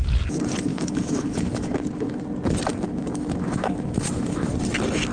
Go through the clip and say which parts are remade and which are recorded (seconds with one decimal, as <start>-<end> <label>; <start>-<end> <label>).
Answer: 0.0-0.7 recorded; 0.7-2.2 remade; 2.2-2.7 recorded; 2.7-4.5 remade; 4.5-5.1 recorded